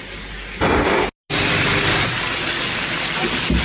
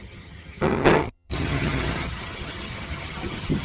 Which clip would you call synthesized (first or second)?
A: second